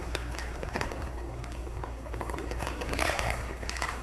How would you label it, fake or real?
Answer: fake